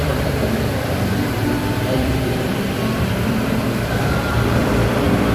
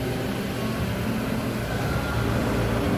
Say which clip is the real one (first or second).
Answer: second